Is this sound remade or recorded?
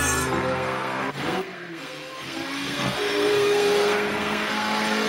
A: remade